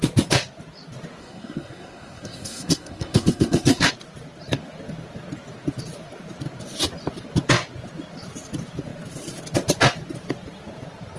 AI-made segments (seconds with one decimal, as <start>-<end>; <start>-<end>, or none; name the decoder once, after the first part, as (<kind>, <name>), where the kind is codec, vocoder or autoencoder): 1.2-3.9 (codec, SNAC)